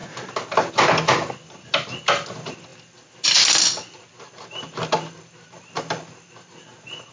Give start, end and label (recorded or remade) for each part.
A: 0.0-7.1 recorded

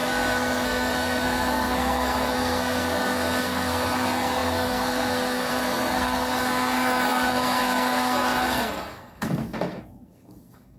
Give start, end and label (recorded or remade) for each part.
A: 0.0-10.8 remade

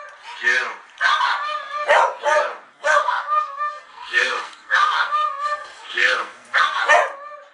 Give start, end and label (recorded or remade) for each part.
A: 0.0-2.7 recorded; 2.7-6.8 remade; 6.8-7.5 recorded